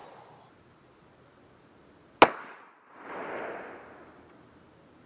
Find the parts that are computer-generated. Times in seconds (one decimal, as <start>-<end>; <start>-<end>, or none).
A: none